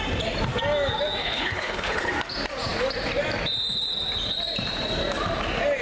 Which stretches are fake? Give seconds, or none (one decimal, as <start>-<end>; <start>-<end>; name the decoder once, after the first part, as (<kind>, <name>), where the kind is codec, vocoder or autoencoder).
1.2-2.1 (codec, HILCodec)